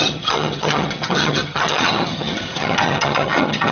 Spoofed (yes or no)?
yes